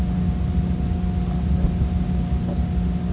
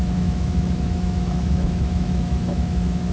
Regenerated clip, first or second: second